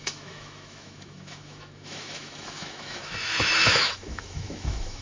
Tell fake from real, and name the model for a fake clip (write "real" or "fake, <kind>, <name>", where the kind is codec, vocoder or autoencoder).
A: fake, autoencoder, DAC-VAE